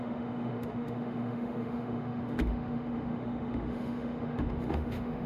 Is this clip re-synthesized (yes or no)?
yes